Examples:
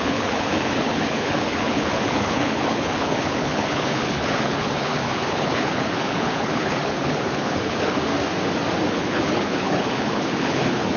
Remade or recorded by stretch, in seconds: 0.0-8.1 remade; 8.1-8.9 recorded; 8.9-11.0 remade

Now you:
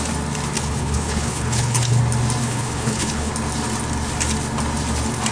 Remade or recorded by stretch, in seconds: 0.0-0.6 recorded; 0.6-2.0 remade; 2.0-2.4 recorded; 2.4-3.3 remade; 3.3-5.3 recorded